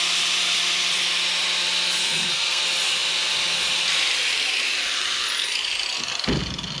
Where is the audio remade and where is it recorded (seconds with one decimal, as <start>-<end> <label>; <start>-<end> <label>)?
0.0-2.0 recorded; 2.0-2.6 remade; 2.6-6.8 recorded

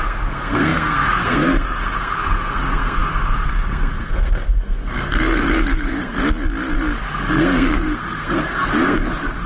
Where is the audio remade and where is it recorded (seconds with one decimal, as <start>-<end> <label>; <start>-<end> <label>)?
0.0-6.2 remade; 6.2-7.2 recorded; 7.2-9.5 remade

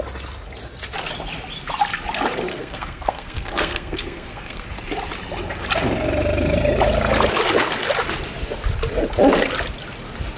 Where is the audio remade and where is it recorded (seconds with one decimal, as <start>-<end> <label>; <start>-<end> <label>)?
0.0-2.5 recorded; 2.5-4.7 remade; 4.7-10.4 recorded

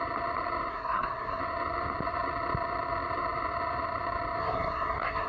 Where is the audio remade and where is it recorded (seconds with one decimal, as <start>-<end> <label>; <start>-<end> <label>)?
0.0-0.7 recorded; 0.7-1.4 remade; 1.4-4.4 recorded; 4.4-5.3 remade